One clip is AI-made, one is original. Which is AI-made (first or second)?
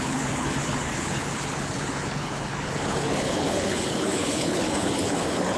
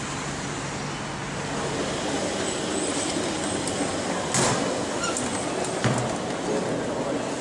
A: first